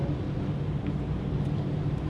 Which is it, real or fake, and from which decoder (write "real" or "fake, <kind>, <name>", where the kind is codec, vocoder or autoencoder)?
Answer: real